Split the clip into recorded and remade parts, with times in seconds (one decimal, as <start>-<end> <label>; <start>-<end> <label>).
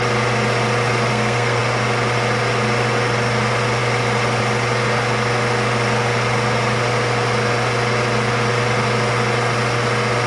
0.0-1.1 recorded; 1.1-1.6 remade; 1.6-10.3 recorded